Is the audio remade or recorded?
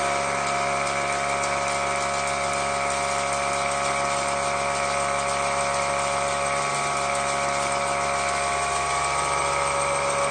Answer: recorded